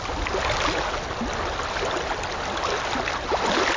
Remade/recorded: recorded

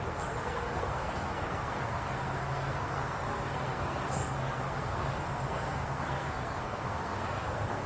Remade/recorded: remade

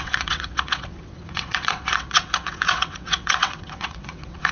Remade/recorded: remade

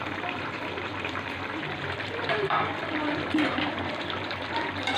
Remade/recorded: remade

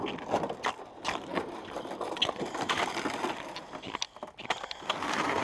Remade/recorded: recorded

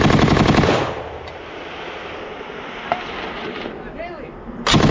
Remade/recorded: recorded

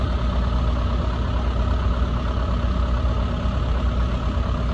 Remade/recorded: recorded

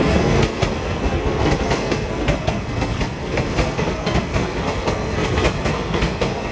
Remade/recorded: remade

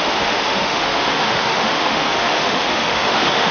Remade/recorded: remade